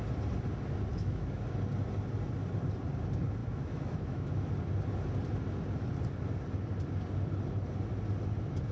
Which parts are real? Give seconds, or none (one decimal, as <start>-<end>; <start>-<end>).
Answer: 0.0-0.9; 1.4-3.4; 4.5-8.7